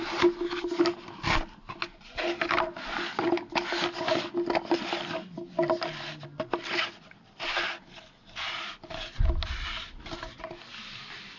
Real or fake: real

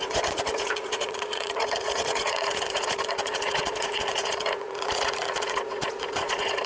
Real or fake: fake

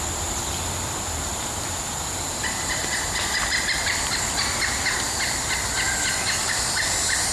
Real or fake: real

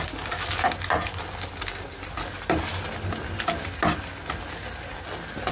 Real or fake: real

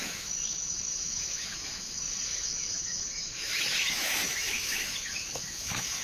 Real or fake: fake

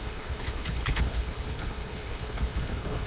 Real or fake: fake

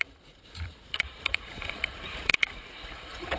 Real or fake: fake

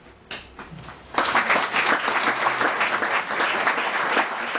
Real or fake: real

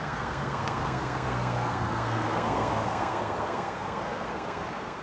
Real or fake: fake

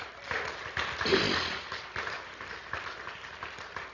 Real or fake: real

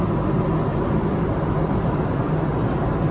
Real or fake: real